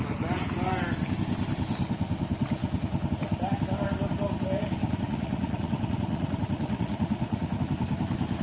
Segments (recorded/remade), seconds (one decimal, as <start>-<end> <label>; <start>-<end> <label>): 0.0-4.8 recorded; 4.8-7.6 remade; 7.6-8.4 recorded